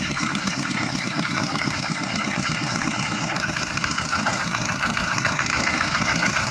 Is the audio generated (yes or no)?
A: yes